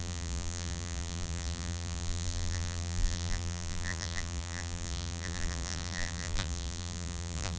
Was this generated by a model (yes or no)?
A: yes